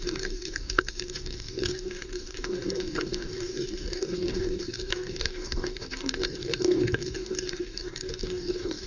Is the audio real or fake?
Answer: fake